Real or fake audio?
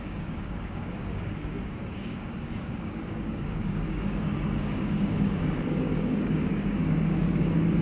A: fake